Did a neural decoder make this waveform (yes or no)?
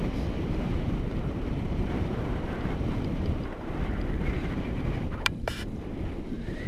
yes